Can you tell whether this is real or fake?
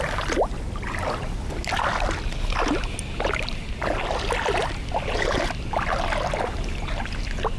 real